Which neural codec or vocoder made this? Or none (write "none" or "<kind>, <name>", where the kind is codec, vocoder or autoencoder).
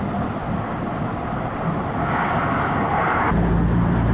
none